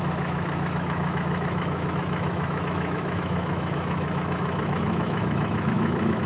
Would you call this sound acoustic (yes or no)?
no